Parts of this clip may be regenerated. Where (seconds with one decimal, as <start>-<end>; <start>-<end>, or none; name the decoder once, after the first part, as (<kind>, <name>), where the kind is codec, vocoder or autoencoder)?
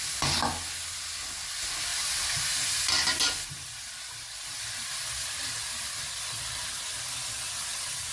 none